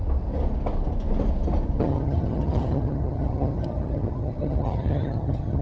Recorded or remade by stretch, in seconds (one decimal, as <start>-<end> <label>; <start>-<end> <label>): 0.0-1.8 recorded; 1.8-5.6 remade